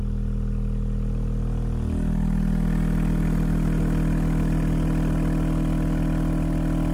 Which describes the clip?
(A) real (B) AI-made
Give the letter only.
A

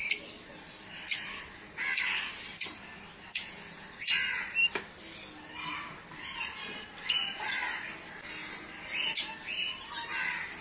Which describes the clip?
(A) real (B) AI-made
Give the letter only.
A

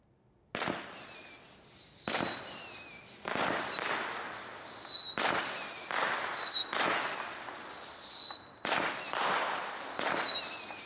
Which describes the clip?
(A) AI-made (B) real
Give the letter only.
B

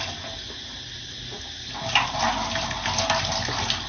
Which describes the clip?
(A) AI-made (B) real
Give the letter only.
B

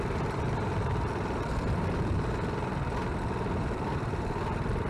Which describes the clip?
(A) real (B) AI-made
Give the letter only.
A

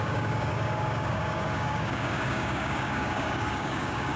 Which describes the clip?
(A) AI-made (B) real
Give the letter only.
A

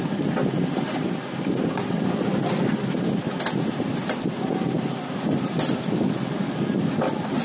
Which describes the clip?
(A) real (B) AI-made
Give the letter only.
A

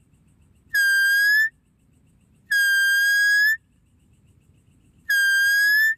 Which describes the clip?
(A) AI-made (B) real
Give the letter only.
B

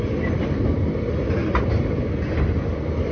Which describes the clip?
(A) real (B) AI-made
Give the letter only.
A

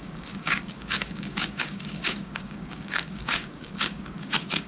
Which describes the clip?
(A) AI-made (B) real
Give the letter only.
A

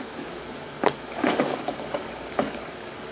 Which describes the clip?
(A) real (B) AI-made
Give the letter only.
B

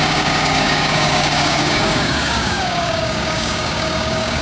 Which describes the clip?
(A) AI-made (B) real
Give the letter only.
A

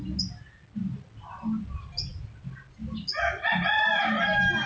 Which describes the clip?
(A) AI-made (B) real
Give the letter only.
B